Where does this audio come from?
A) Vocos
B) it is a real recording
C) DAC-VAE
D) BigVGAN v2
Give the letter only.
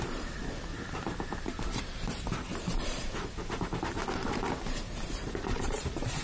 D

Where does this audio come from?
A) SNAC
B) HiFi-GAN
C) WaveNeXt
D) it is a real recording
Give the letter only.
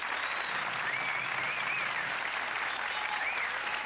D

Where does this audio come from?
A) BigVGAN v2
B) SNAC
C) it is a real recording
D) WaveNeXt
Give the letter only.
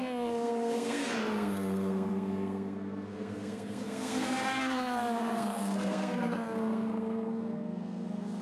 B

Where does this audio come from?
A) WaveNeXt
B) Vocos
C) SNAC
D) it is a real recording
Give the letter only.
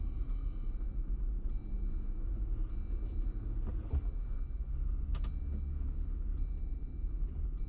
D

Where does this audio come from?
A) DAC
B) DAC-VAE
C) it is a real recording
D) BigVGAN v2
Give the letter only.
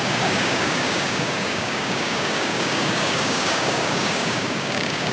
A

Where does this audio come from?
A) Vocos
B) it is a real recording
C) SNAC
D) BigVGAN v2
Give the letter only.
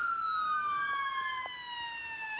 B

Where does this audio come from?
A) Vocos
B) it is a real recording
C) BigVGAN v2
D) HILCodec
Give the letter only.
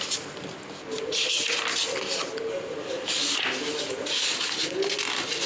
B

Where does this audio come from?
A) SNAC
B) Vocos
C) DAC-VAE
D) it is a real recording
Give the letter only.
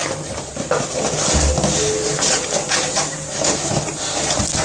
D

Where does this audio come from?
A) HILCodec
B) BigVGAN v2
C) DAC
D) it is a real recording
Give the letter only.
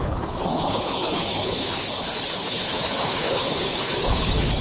A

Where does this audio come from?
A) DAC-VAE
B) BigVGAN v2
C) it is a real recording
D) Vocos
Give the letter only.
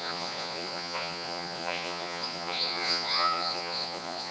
D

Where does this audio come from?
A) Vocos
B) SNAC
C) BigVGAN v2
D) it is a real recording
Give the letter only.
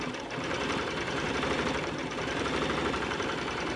C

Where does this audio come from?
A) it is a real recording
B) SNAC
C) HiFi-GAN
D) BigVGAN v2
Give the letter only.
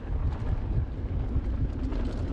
A